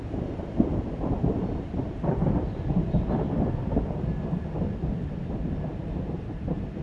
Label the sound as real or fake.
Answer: real